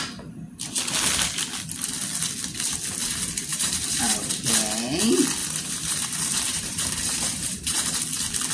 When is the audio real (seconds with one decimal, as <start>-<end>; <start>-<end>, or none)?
0.0-3.5; 4.3-5.4; 8.0-8.5